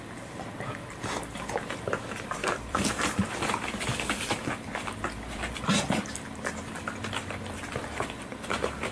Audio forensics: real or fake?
fake